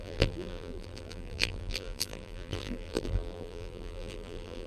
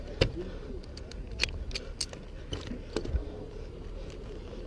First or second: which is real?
second